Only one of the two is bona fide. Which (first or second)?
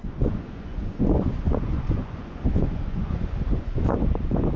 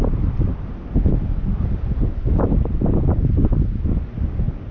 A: second